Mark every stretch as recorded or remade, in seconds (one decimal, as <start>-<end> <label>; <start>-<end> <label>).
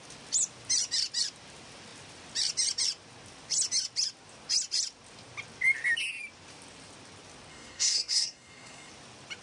0.0-7.5 recorded; 7.5-8.9 remade; 8.9-9.4 recorded